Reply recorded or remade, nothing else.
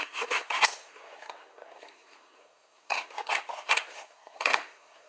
remade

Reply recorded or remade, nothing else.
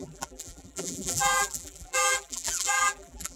remade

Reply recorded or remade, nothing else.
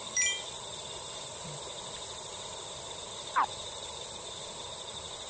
remade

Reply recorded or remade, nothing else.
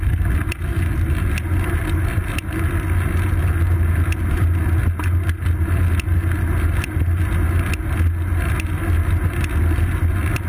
recorded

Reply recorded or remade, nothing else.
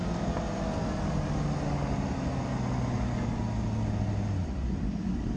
recorded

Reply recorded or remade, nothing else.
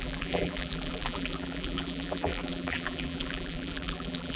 remade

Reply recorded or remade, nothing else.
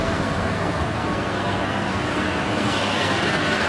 remade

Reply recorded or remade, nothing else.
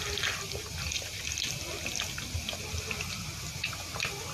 recorded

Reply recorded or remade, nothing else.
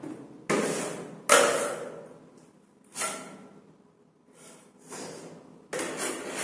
recorded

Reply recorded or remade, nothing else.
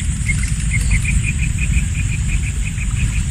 recorded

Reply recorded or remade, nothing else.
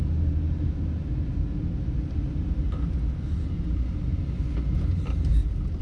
recorded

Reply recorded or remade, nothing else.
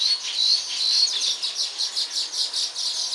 recorded